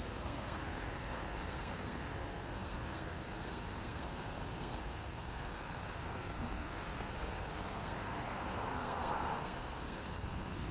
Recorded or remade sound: remade